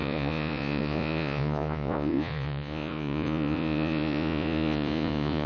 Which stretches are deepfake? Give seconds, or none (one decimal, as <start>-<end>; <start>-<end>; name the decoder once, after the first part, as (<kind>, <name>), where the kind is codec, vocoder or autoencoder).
0.0-5.5 (vocoder, Vocos)